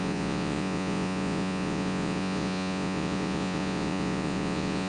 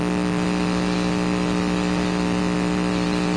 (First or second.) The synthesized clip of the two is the first